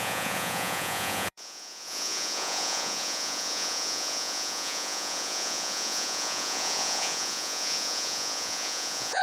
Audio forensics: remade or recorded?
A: remade